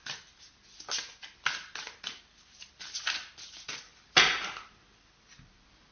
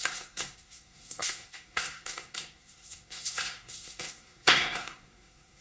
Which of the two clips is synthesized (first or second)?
second